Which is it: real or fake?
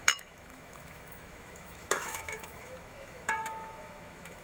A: fake